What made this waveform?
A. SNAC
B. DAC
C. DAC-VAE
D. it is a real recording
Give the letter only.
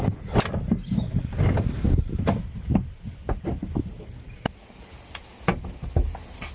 D